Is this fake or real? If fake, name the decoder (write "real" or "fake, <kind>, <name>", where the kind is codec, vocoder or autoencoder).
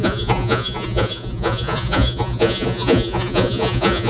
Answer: fake, vocoder, Vocos